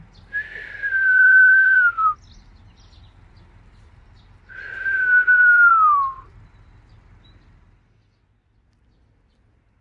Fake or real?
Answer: fake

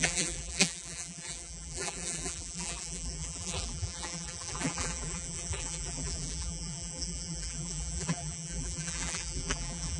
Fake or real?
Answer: fake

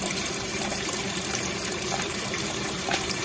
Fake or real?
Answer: fake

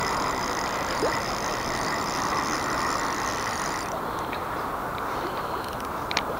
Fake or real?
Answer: real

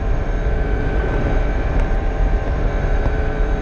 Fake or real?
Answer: fake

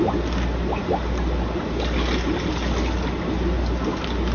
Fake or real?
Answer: real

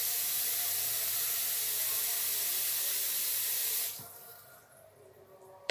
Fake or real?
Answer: fake